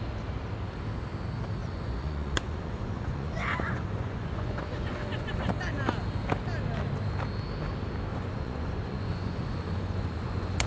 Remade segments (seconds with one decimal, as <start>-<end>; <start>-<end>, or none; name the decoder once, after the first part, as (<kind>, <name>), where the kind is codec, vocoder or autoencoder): 1.6-5.5 (vocoder, Vocos); 8.1-10.7